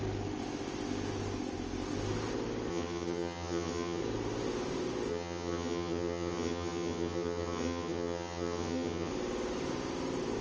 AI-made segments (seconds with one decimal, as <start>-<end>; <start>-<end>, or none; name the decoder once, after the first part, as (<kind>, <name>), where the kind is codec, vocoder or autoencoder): 2.7-4.0 (vocoder, HiFi-GAN); 5.1-9.1